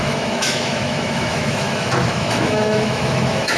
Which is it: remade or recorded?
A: remade